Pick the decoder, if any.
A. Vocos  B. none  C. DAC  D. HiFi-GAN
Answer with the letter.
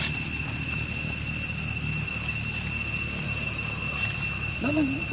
B